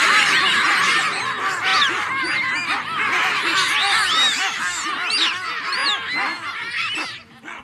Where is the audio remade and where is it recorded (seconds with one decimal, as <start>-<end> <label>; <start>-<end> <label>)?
0.0-7.6 recorded